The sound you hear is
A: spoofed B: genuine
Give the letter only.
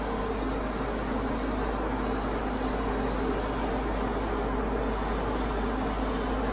B